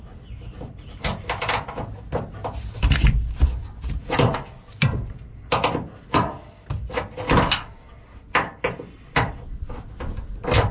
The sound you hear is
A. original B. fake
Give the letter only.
A